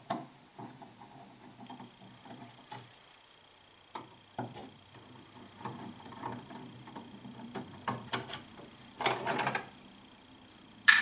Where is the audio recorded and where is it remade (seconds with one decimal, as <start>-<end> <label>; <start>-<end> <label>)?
0.0-11.0 remade